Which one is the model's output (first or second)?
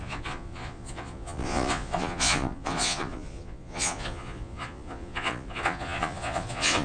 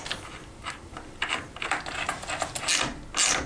first